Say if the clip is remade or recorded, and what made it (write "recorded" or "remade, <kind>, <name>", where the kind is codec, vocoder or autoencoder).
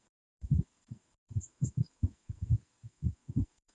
remade, codec, SNAC